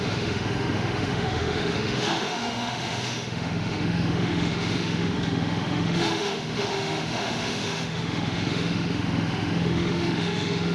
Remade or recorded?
remade